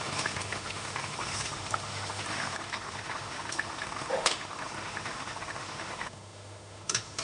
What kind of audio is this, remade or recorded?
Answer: remade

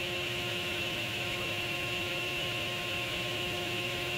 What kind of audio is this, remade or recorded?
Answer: remade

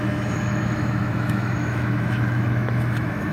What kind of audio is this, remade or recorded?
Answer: remade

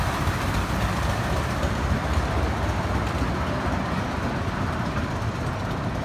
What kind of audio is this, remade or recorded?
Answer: recorded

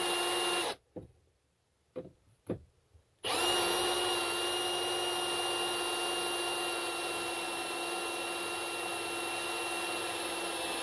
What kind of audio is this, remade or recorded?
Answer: recorded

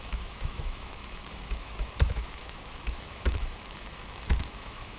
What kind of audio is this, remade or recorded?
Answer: remade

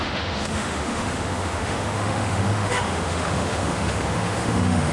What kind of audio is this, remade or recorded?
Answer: remade